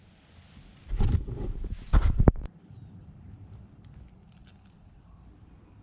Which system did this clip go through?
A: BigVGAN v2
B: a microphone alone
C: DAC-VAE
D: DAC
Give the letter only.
A